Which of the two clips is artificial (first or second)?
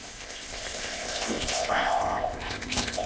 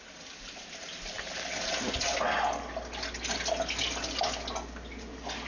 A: first